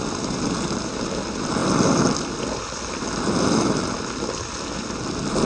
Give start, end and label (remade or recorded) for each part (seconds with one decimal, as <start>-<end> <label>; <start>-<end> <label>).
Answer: 0.0-5.4 remade